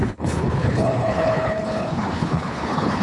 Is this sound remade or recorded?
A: remade